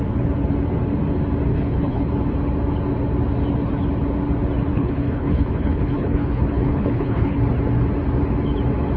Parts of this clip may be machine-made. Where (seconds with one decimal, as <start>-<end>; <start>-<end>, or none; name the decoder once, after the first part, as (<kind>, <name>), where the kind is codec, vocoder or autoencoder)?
1.5-2.1 (codec, HILCodec); 4.7-7.4